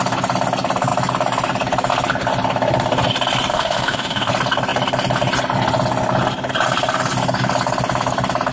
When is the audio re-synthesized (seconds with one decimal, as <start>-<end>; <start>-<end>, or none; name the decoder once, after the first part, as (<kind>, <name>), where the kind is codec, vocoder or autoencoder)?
3.5-4.3 (autoencoder, DAC-VAE)